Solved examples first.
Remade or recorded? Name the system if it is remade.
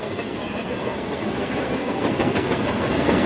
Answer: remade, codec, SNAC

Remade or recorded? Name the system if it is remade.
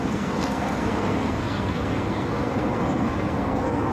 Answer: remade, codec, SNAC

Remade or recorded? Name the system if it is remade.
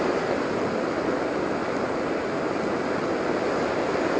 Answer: recorded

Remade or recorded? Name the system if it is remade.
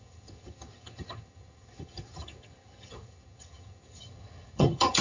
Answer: remade, vocoder, HiFi-GAN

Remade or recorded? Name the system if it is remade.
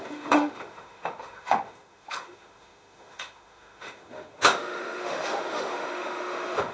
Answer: remade, autoencoder, DAC-VAE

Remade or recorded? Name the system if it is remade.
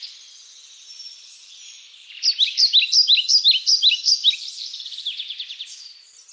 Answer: recorded